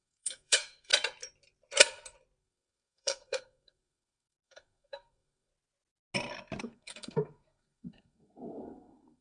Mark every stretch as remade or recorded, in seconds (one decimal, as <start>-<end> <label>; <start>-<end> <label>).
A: 0.0-0.9 remade; 0.9-2.4 recorded; 2.4-5.5 remade; 5.5-6.6 recorded; 6.6-9.2 remade